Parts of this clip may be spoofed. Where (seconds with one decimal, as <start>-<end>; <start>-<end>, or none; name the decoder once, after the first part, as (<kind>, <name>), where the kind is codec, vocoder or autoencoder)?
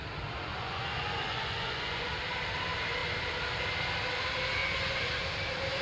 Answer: 0.5-2.1 (vocoder, Vocos); 4.6-5.2